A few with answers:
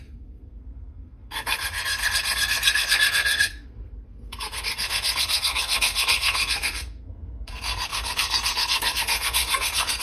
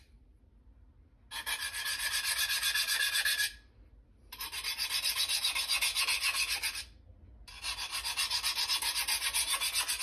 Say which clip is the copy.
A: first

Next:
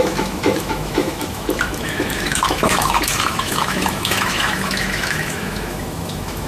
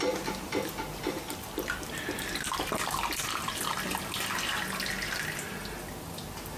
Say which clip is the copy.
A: first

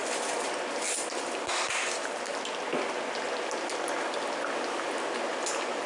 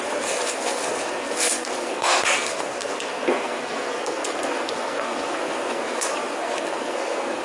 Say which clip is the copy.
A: second